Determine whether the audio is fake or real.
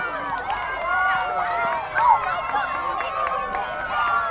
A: real